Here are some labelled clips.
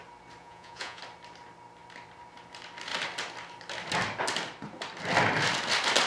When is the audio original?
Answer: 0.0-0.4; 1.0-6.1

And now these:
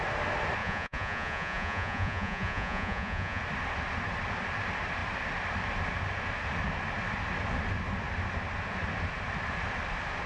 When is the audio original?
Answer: 0.0-0.6; 3.4-10.3

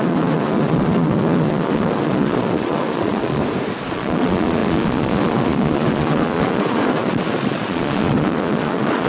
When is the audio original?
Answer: 3.4-3.9